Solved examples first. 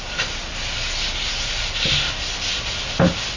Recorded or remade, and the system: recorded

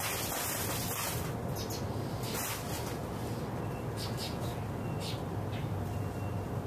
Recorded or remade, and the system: recorded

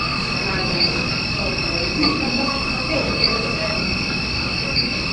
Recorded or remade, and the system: remade, codec, DAC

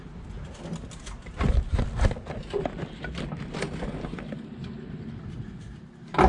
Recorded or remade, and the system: remade, vocoder, BigVGAN v2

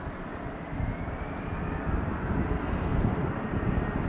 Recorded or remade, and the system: recorded